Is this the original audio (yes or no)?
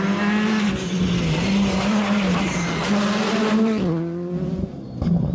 yes